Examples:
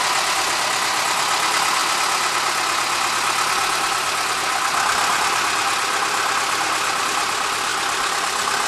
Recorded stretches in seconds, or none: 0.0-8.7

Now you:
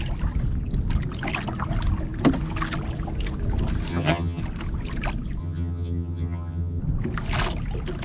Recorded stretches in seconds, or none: 0.0-3.9; 4.4-5.4; 6.8-8.0

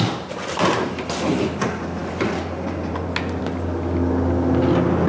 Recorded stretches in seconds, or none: 0.0-5.1

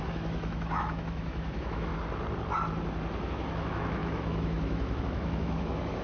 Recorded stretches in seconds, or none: 1.9-3.3

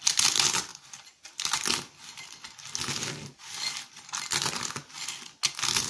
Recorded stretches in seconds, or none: 0.0-5.9

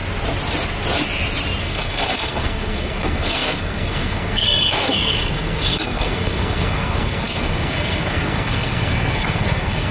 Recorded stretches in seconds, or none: 0.0-1.6

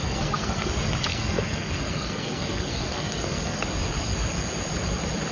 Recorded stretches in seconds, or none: 0.7-1.1; 3.6-5.3

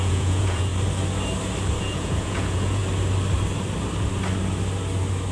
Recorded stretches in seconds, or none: 0.7-1.8; 2.8-5.3